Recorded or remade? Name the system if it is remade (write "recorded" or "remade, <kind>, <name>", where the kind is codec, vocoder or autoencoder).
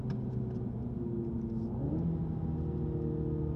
recorded